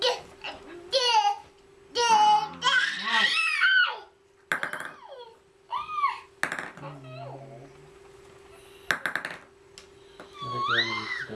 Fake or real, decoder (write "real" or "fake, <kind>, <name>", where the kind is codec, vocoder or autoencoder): real